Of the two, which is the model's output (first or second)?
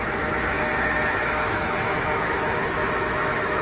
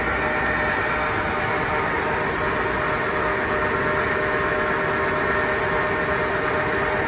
first